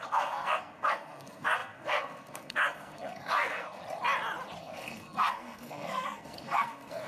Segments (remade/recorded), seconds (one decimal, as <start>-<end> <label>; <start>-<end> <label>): 0.0-3.8 remade; 3.8-4.6 recorded; 4.6-7.1 remade